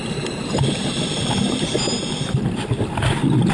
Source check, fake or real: real